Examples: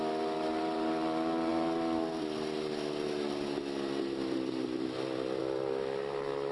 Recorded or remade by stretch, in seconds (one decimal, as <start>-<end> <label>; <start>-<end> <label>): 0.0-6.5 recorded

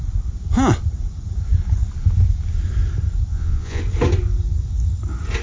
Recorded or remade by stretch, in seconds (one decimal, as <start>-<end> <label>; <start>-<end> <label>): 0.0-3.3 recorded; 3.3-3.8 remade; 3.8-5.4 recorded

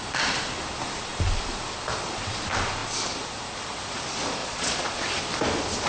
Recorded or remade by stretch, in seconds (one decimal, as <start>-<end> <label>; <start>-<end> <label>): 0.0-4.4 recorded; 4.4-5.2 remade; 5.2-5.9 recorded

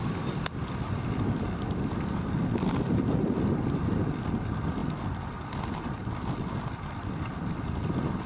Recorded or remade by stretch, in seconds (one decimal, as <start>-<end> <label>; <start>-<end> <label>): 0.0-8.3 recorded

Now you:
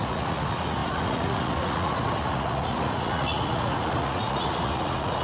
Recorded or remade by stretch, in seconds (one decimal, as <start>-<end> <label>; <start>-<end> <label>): 0.0-5.2 remade

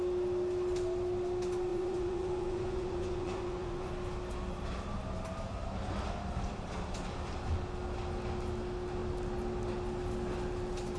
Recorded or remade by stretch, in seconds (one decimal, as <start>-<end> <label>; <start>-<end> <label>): 0.0-1.7 recorded; 1.7-3.9 remade; 3.9-11.0 recorded

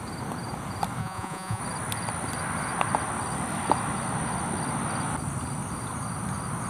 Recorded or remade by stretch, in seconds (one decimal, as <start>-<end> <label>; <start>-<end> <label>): 0.0-1.0 recorded; 1.0-1.6 remade; 1.6-6.7 recorded